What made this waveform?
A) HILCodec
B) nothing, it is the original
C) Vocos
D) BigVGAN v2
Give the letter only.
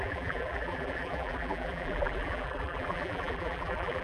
D